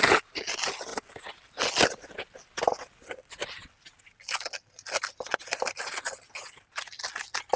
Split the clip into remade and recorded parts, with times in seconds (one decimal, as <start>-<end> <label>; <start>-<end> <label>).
0.0-7.6 recorded